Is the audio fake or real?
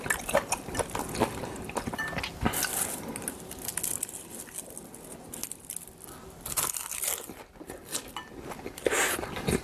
real